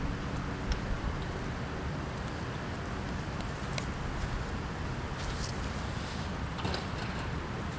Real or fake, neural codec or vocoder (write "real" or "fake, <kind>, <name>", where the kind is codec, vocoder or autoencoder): real